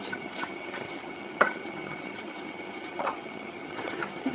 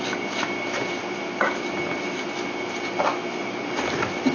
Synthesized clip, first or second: first